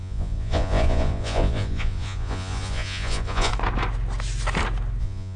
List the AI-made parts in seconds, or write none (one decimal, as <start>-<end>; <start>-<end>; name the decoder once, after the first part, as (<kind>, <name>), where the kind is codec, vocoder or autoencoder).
0.0-3.5 (vocoder, Vocos); 5.0-5.4